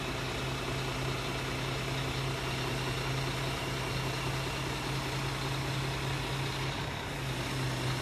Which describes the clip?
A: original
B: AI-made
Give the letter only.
A